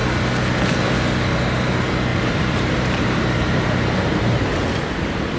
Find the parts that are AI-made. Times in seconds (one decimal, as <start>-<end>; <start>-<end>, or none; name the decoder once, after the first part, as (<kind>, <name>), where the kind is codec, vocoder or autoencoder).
2.1-4.7 (vocoder, BigVGAN v2)